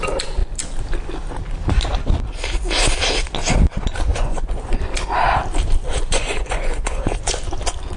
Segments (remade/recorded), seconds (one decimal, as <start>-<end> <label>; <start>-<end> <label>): 0.0-4.1 recorded; 4.1-4.8 remade; 4.8-5.9 recorded; 5.9-7.4 remade; 7.4-8.0 recorded